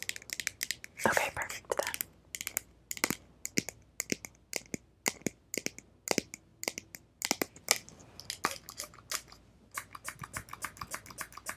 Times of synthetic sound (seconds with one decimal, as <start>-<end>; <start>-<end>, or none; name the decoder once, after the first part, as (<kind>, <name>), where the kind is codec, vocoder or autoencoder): none